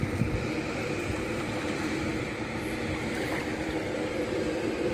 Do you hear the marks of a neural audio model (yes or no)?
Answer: yes